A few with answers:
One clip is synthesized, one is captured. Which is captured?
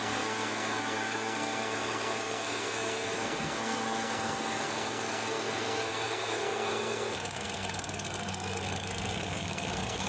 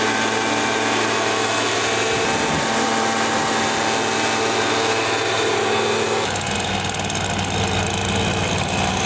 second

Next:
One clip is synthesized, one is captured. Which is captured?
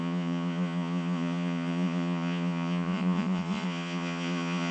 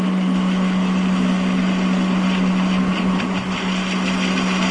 second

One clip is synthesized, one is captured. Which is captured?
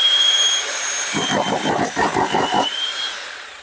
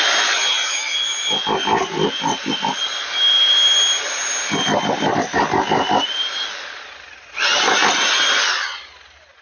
second